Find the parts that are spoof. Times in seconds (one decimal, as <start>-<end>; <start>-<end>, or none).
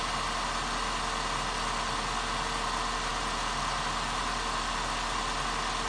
none